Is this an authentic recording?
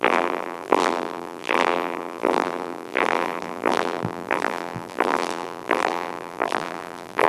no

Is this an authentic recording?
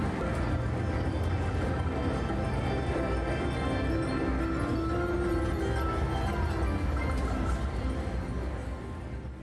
yes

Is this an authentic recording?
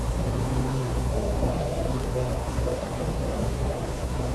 no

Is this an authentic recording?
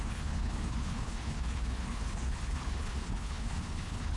no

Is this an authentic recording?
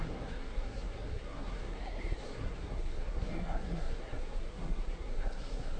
no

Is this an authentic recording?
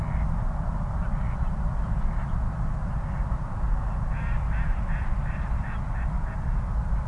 yes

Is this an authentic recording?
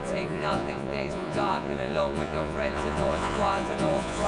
no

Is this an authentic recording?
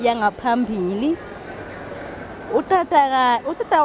yes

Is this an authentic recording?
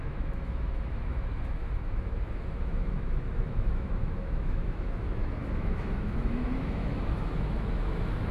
no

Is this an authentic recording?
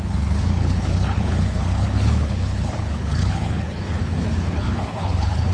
no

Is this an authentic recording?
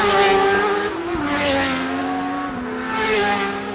yes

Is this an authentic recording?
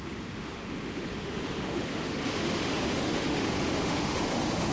no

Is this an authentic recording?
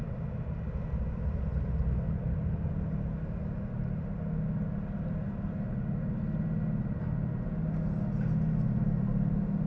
yes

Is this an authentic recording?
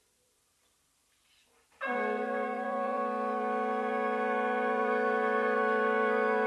no